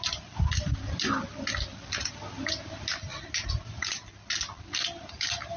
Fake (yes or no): no